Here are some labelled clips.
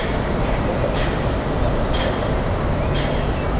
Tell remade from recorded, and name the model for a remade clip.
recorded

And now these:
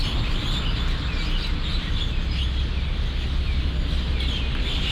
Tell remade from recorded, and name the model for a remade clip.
recorded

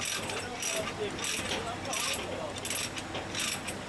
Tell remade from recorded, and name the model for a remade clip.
recorded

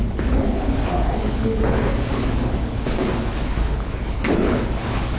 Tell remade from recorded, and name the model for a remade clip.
remade, codec, HILCodec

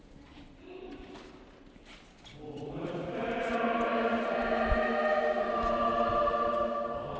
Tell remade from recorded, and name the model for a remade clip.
recorded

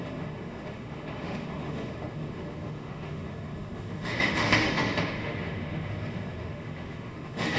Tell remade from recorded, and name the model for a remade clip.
remade, autoencoder, DAC-VAE